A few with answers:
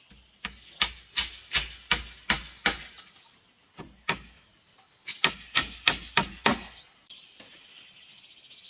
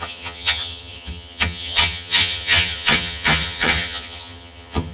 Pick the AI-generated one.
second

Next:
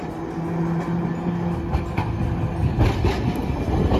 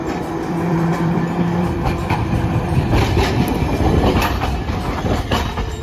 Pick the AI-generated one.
second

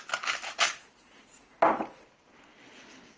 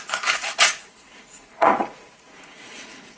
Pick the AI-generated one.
second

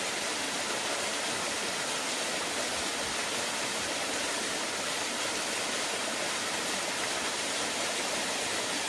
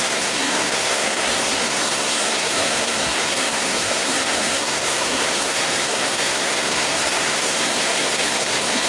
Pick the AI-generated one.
second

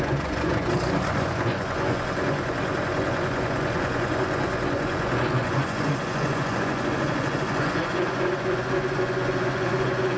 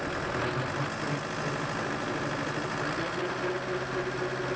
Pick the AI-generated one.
first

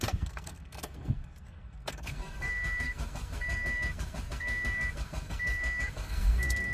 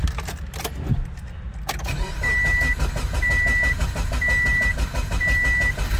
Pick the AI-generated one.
first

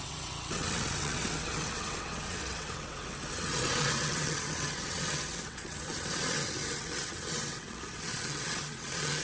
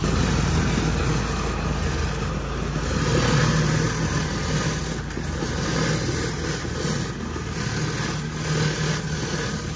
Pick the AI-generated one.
first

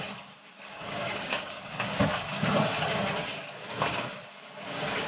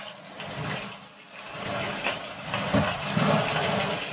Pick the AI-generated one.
first